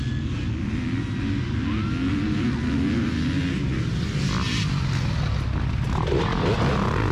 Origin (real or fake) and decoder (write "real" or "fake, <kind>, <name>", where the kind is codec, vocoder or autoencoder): real